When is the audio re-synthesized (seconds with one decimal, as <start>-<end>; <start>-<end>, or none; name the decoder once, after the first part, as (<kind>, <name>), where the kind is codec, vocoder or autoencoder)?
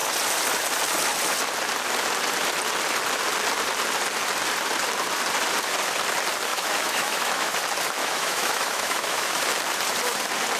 6.5-7.5 (autoencoder, DAC-VAE); 8.0-9.4